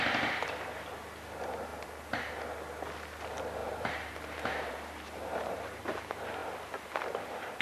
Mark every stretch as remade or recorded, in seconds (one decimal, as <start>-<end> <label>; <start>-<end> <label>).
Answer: 0.0-1.7 recorded; 1.7-2.3 remade; 2.3-3.6 recorded; 3.6-5.8 remade; 5.8-7.6 recorded

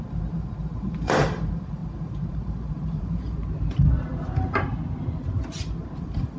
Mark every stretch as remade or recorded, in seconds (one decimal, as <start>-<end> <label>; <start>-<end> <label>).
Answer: 0.0-3.4 remade; 3.4-6.0 recorded; 6.0-6.4 remade

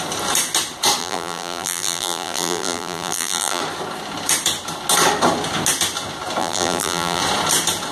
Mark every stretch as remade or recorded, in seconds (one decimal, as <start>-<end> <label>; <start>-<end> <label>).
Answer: 0.0-1.0 recorded; 1.0-3.6 remade; 3.6-6.4 recorded; 6.4-7.2 remade; 7.2-7.9 recorded

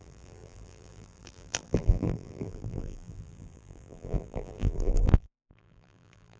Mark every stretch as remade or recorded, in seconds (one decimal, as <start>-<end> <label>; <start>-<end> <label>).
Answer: 0.0-6.4 remade